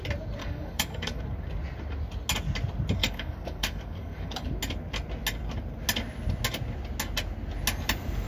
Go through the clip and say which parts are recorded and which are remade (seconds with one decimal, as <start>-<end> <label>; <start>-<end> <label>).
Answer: 0.0-0.4 recorded; 0.4-1.2 remade; 1.2-3.0 recorded; 3.0-4.5 remade; 4.5-8.3 recorded